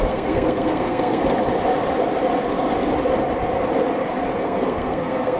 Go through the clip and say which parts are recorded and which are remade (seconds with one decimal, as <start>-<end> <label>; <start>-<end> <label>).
0.0-1.2 remade; 1.2-4.4 recorded; 4.4-5.4 remade